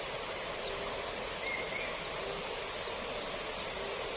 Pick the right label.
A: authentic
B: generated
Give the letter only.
A